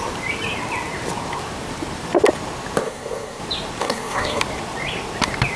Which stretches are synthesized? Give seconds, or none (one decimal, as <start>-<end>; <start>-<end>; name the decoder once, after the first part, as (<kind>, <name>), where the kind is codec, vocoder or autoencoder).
2.8-3.4 (codec, SNAC); 3.8-4.4